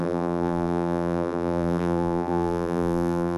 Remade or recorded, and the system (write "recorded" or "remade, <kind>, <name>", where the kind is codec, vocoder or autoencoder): remade, vocoder, BigVGAN v2